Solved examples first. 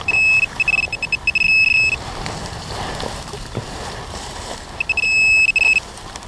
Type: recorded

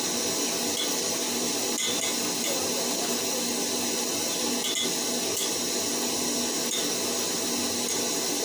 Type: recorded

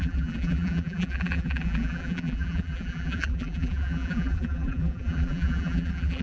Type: remade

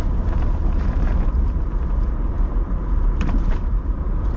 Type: remade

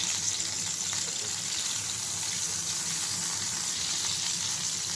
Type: remade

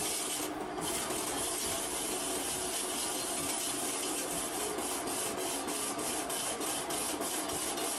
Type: recorded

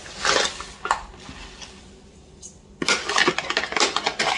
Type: recorded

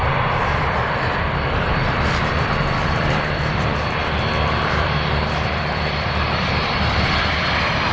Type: remade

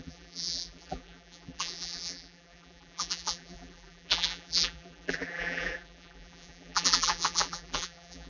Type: remade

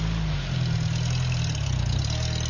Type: recorded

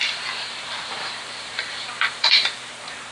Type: remade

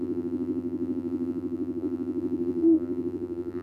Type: remade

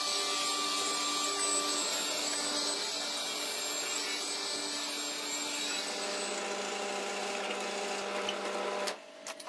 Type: recorded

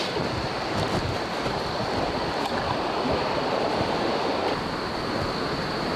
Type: recorded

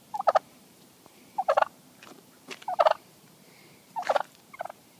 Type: remade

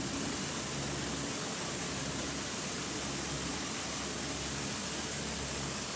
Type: recorded